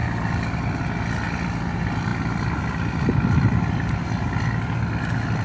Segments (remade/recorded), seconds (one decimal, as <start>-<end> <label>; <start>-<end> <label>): 0.0-5.4 recorded